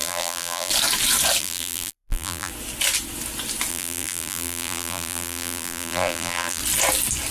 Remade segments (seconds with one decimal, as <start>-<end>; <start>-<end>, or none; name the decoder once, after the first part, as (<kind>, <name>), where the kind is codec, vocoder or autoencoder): 0.0-0.7 (vocoder, BigVGAN v2); 1.4-2.5; 3.7-6.6